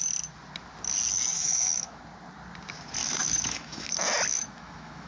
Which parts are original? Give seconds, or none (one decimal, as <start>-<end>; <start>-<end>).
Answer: 0.0-1.3; 2.0-3.0; 3.9-4.3